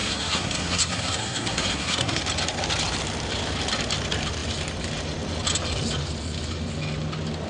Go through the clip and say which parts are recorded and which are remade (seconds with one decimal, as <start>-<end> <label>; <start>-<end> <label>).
0.0-2.2 remade; 2.2-7.5 recorded